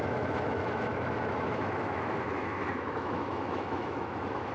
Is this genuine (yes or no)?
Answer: no